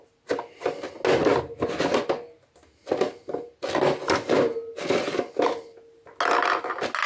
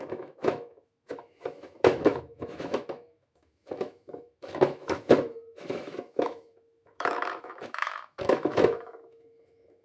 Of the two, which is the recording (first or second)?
first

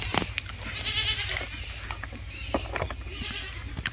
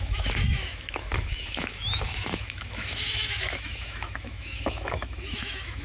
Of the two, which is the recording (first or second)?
first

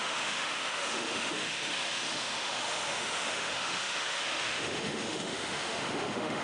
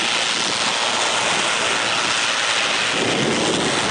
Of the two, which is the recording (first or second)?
second